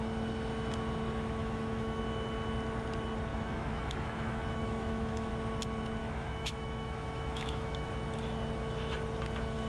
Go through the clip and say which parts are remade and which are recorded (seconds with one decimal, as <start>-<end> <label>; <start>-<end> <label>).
0.0-1.4 recorded; 1.4-2.0 remade; 2.0-3.3 recorded; 3.3-5.3 remade; 5.3-6.0 recorded; 6.0-7.9 remade; 7.9-9.7 recorded